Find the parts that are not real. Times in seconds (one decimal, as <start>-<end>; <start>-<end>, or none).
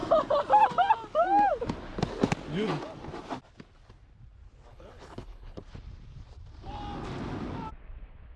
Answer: 4.7-5.6